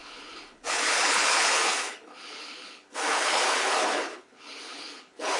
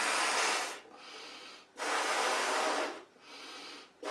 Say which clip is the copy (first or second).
first